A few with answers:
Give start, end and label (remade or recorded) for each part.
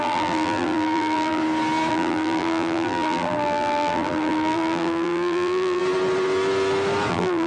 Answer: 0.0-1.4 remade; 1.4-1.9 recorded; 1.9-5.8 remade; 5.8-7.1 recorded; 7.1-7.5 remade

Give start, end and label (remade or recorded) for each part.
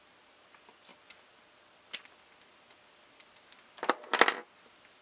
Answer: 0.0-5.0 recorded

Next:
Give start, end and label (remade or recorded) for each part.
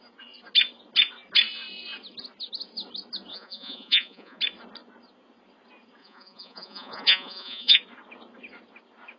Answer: 0.0-3.3 recorded; 3.3-4.4 remade; 4.4-6.0 recorded; 6.0-7.8 remade; 7.8-9.2 recorded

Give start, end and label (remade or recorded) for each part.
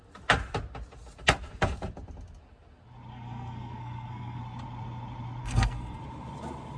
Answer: 0.0-3.1 recorded; 3.1-4.4 remade; 4.4-5.4 recorded; 5.4-6.0 remade; 6.0-6.8 recorded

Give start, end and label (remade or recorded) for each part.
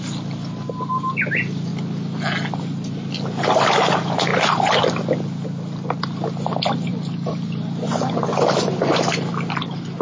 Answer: 0.0-4.3 recorded; 4.3-5.0 remade; 5.0-6.9 recorded; 6.9-8.1 remade; 8.1-10.0 recorded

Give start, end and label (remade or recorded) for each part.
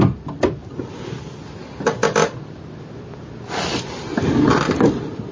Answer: 0.0-5.3 recorded